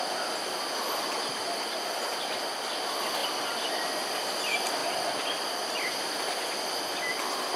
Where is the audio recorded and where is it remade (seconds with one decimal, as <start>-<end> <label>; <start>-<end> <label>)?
0.0-7.6 recorded